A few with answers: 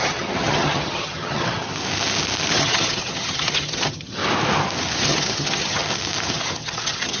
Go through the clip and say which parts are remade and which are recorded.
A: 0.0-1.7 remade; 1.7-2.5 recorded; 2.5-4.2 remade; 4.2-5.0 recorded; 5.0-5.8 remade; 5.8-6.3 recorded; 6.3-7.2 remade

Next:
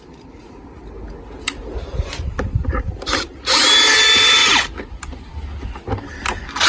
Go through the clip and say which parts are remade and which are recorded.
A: 0.0-1.7 recorded; 1.7-3.5 remade; 3.5-6.7 recorded

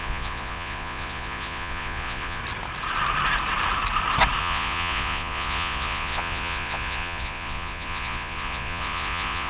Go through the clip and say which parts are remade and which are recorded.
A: 0.0-2.4 remade; 2.4-4.4 recorded; 4.4-9.5 remade

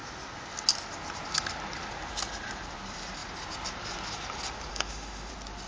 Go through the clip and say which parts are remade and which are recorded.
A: 0.0-4.7 recorded; 4.7-5.3 remade; 5.3-5.7 recorded

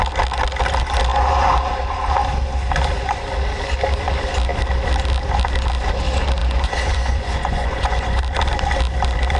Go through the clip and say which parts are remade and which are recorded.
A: 0.0-6.4 recorded; 6.4-8.2 remade; 8.2-9.4 recorded

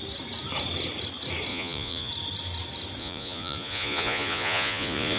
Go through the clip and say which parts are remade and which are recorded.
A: 0.0-1.5 recorded; 1.5-2.1 remade; 2.1-3.0 recorded; 3.0-5.2 remade

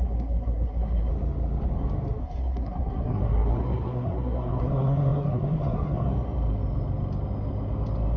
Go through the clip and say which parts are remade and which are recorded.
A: 0.0-1.1 remade; 1.1-2.2 recorded; 2.2-6.1 remade; 6.1-8.2 recorded

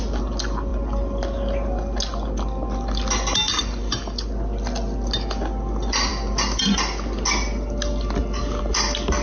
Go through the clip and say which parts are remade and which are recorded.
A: 0.0-9.2 recorded